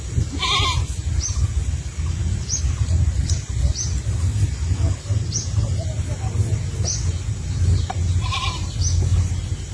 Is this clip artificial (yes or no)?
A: no